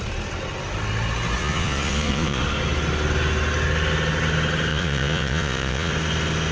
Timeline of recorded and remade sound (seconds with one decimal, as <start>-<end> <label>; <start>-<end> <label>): 0.0-1.4 recorded; 1.4-2.4 remade; 2.4-4.7 recorded; 4.7-5.9 remade; 5.9-6.5 recorded